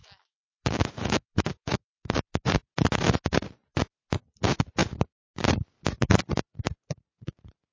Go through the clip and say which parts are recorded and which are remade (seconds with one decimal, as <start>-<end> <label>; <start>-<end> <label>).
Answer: 0.0-2.2 remade; 2.2-7.7 recorded